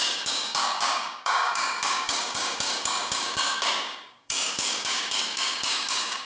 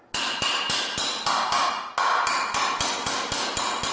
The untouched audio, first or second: second